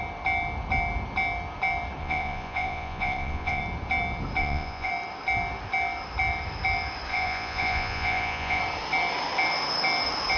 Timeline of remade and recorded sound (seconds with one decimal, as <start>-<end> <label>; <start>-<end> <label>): 0.0-2.0 recorded; 2.0-3.6 remade; 3.6-4.4 recorded; 4.4-4.9 remade; 4.9-7.1 recorded; 7.1-8.6 remade; 8.6-10.4 recorded